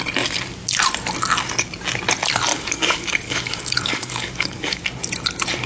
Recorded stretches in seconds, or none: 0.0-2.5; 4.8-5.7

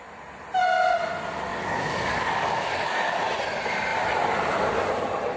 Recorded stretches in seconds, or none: 0.0-1.5; 3.2-5.4

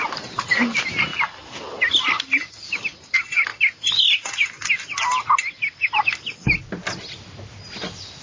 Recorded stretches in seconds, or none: 0.0-8.2

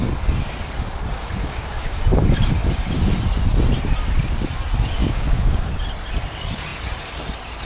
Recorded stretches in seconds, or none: 0.0-1.4; 2.0-5.0; 5.7-7.6

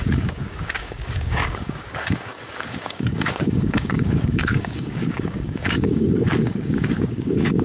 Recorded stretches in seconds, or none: none

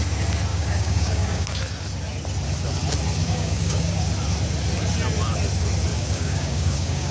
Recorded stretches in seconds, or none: 0.0-0.5; 1.6-3.2; 4.1-5.9

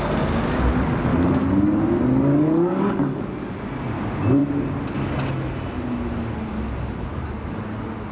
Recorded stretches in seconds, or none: 0.0-1.1; 1.8-2.3; 3.2-7.1; 7.6-8.1

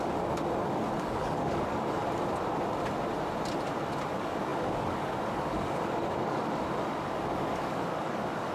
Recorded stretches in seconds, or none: 2.0-4.1